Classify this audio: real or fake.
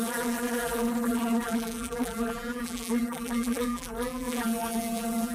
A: fake